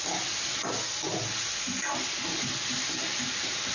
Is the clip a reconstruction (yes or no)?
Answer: no